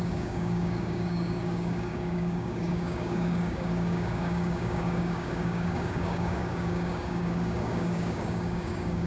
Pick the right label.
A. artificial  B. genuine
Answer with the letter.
A